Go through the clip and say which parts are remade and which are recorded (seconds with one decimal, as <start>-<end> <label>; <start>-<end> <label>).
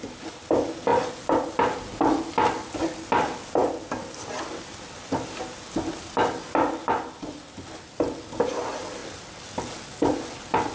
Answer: 0.0-10.7 recorded